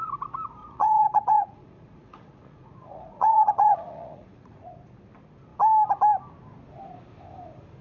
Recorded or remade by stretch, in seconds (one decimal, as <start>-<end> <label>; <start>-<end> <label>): 0.0-0.6 recorded; 0.6-4.7 remade; 4.7-7.8 recorded